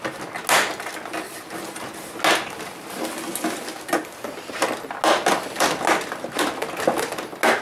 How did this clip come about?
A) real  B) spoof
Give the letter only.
A